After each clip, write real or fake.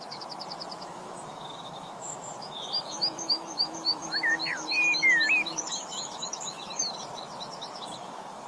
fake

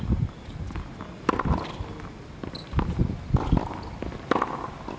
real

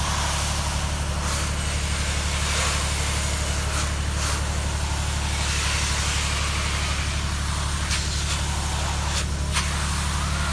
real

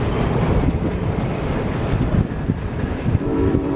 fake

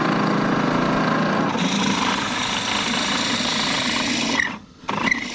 real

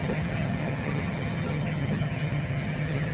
fake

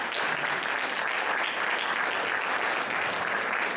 real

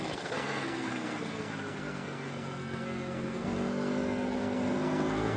fake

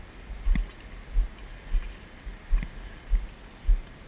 real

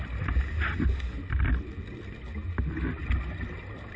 real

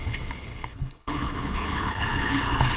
fake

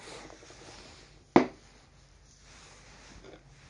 real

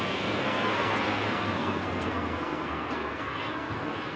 fake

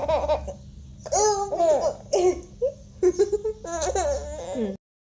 real